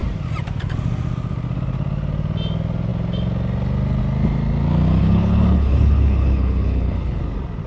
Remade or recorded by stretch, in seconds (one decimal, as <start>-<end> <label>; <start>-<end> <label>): 0.0-5.0 recorded; 5.0-7.2 remade; 7.2-7.7 recorded